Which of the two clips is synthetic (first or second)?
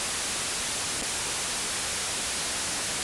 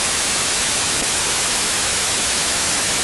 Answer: second